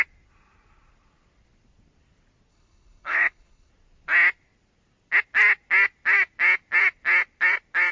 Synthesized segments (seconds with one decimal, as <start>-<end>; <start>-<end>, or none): 2.5-3.7